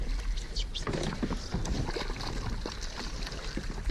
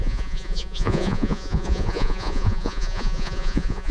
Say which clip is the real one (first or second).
first